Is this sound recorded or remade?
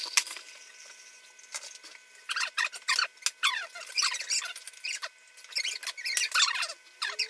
recorded